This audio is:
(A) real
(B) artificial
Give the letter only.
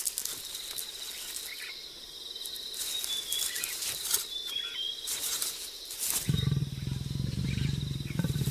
A